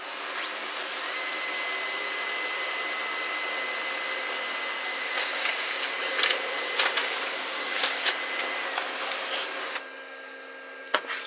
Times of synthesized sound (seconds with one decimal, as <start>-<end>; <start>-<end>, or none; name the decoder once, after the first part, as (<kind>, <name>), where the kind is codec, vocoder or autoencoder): 4.9-5.9 (codec, DAC); 7.0-8.1